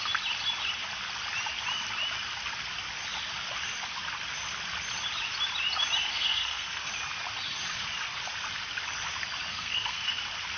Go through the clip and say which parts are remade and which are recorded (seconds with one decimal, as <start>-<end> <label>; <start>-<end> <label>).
0.0-6.1 recorded; 6.1-6.9 remade; 6.9-9.5 recorded; 9.5-10.2 remade; 10.2-10.6 recorded